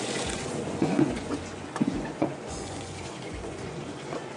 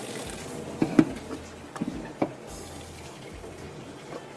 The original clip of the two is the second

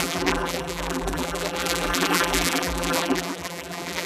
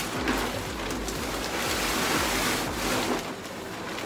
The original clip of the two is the second